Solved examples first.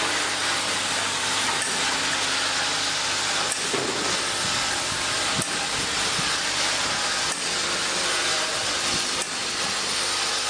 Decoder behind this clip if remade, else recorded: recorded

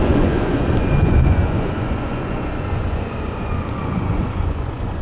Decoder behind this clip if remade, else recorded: remade, vocoder, Vocos